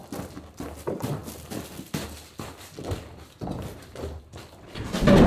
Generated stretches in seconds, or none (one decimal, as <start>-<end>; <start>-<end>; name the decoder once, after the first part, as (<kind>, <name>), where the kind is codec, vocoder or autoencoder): none